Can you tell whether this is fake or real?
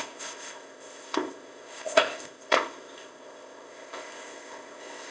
fake